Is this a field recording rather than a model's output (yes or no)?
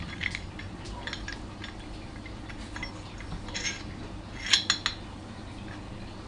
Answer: yes